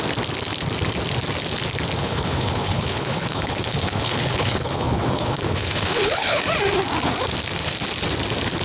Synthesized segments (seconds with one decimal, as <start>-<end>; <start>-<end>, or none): 2.0-6.4